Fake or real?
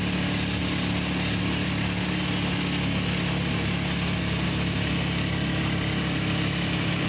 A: real